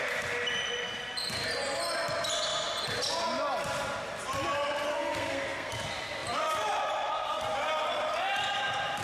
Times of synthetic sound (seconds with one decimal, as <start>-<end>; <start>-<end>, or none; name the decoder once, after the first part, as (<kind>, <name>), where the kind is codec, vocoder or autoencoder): 4.9-5.7 (codec, SNAC)